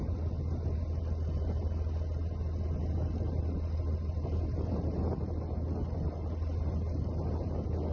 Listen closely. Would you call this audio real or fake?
real